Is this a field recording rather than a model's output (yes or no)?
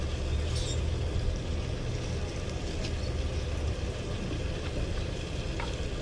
yes